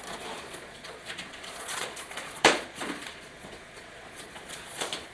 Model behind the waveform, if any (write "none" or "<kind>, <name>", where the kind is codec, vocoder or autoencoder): vocoder, Vocos